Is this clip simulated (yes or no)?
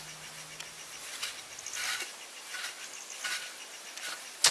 no